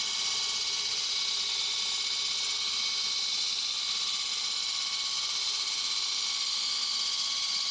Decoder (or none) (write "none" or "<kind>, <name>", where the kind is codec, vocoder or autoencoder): none